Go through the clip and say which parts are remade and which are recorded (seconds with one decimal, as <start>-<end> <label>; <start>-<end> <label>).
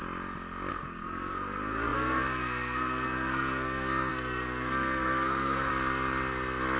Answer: 0.0-0.7 recorded; 0.7-5.7 remade; 5.7-6.8 recorded